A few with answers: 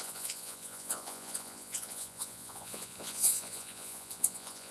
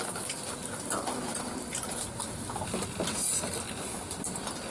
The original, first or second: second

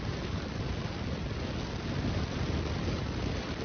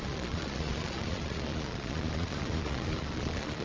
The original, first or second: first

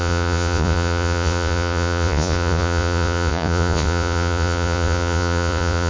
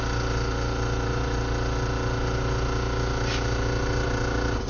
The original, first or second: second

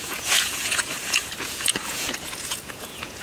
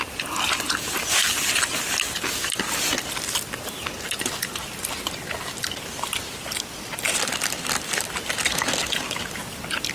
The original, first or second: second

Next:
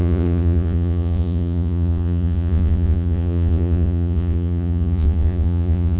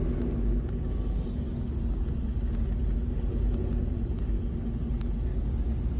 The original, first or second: second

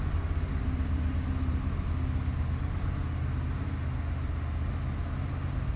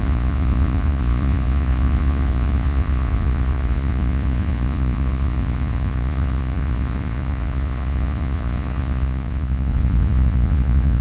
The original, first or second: first